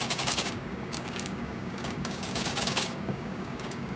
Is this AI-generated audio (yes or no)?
yes